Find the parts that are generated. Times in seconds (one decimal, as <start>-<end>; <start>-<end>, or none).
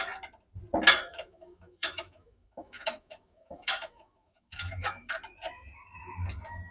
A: 1.1-5.1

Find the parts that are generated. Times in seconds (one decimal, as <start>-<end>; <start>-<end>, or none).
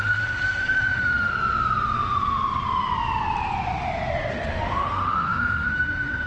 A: 0.0-1.3; 4.3-6.3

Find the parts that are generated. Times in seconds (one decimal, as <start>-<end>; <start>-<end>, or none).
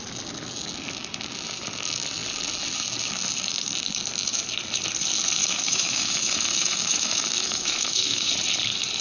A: 5.4-8.3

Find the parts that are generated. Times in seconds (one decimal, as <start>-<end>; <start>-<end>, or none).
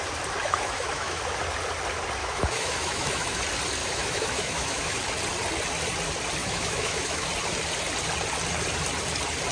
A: 0.4-1.2; 2.2-3.4; 3.8-5.0; 6.4-7.3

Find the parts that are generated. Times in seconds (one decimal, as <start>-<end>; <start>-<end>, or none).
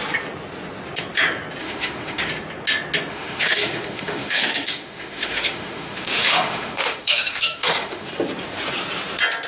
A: 1.6-2.3; 3.1-8.1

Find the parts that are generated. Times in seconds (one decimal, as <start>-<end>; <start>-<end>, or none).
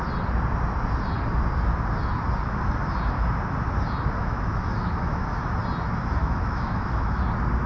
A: 4.2-5.3; 6.2-7.2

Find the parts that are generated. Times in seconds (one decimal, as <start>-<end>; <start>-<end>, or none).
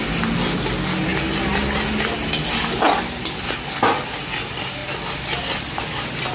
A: none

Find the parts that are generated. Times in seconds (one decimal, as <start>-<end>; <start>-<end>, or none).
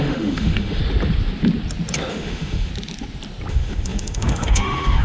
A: 0.0-0.8; 2.1-2.7; 3.5-5.0